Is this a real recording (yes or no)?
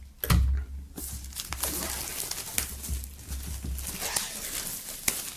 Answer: yes